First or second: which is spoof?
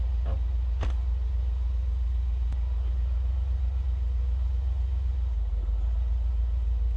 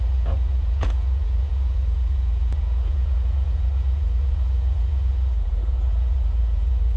second